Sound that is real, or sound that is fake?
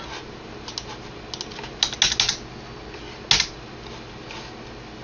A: real